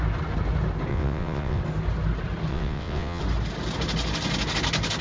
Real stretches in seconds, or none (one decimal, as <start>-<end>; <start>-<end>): 0.0-0.9; 1.6-2.5; 3.2-5.0